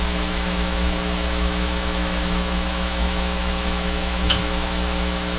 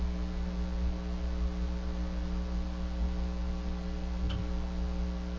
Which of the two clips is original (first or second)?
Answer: second